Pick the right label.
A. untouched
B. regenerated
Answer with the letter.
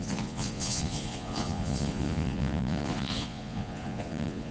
B